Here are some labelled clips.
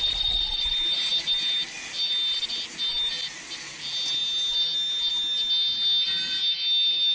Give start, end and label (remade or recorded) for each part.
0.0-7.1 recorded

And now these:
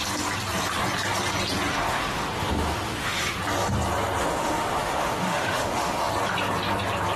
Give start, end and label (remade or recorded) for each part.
0.0-1.7 recorded; 1.7-3.4 remade; 3.4-4.2 recorded; 4.2-6.1 remade; 6.1-7.2 recorded

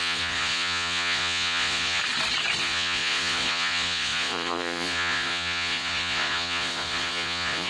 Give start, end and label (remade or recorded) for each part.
0.0-2.0 remade; 2.0-2.6 recorded; 2.6-7.7 remade

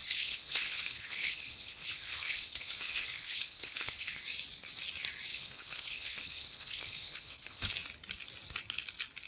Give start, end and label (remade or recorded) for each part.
0.0-4.2 remade; 4.2-5.3 recorded; 5.3-7.7 remade; 7.7-9.3 recorded

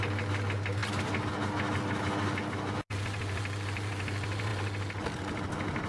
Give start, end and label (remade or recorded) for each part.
0.0-5.9 recorded

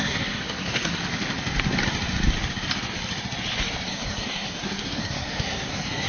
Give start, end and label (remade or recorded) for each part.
0.0-1.0 remade; 1.0-3.9 recorded; 3.9-6.1 remade